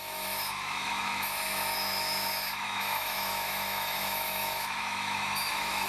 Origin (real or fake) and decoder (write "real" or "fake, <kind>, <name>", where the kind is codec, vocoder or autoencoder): fake, autoencoder, DAC-VAE